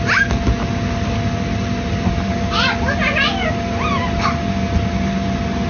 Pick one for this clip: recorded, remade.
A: recorded